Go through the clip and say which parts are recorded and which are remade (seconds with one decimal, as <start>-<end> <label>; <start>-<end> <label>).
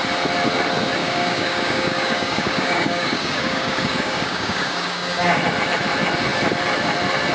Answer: 0.0-1.0 recorded; 1.0-5.4 remade; 5.4-7.3 recorded